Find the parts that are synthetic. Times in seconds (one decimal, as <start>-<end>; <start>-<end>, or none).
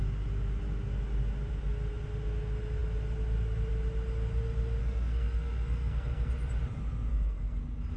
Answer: 4.8-6.3; 7.1-7.6